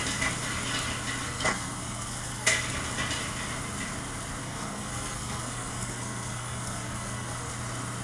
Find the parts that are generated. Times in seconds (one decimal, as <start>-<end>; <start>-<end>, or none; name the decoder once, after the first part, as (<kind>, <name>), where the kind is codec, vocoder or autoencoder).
1.2-2.8 (codec, SNAC); 4.4-7.5